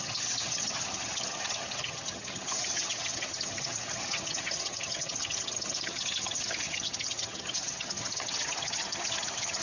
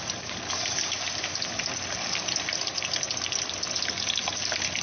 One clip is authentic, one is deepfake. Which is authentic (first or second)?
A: second